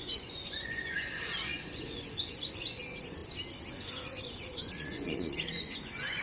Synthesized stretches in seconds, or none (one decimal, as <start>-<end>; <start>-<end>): 0.0-3.2; 3.7-6.2